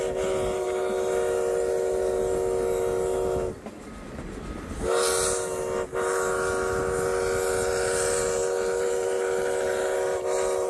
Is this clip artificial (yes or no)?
no